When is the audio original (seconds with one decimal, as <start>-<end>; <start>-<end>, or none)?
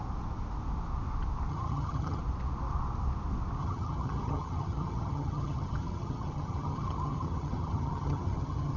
0.0-1.5; 2.2-3.6